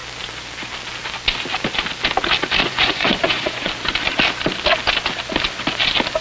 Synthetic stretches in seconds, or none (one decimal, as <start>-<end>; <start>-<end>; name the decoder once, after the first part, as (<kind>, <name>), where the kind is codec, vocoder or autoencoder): 2.6-3.7 (vocoder, Vocos)